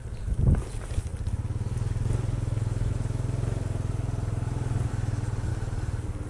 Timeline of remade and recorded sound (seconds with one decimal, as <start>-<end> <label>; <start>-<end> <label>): 0.0-5.5 recorded; 5.5-6.3 remade